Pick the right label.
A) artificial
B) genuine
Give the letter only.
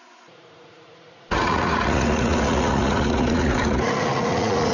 A